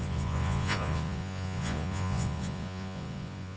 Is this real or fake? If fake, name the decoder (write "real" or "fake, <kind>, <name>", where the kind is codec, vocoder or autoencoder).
fake, vocoder, Vocos